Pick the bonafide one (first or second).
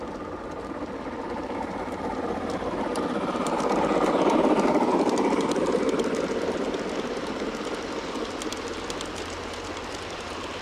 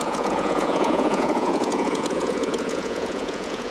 first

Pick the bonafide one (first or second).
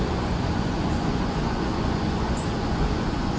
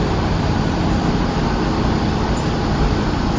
second